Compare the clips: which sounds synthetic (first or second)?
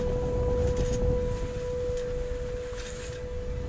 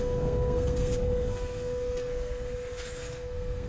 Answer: second